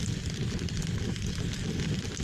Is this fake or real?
real